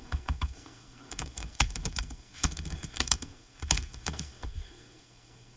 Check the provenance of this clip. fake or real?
fake